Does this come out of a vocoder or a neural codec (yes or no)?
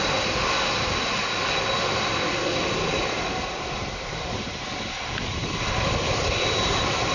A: no